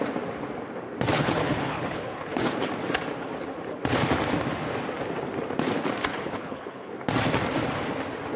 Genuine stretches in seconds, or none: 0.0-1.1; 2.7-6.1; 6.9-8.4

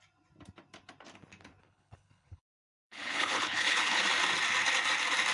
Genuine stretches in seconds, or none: 0.0-1.6; 4.0-5.3

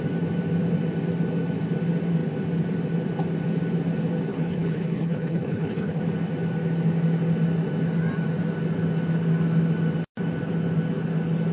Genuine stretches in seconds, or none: 0.0-4.3; 6.0-11.5

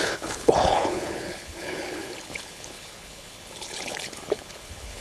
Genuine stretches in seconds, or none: none

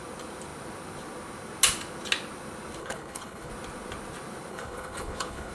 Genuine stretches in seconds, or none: 0.0-2.8; 3.5-4.5

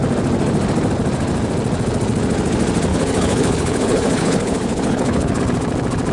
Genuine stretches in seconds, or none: 0.0-2.9; 5.4-6.1